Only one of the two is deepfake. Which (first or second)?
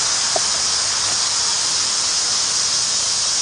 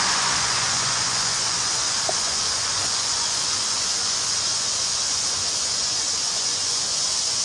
second